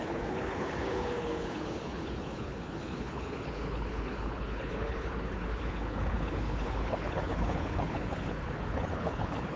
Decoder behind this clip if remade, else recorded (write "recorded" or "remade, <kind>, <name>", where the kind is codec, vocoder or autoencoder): remade, codec, HILCodec